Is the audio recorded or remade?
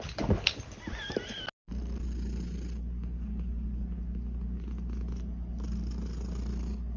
recorded